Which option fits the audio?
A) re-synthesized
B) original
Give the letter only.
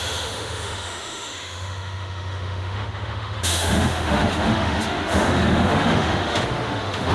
A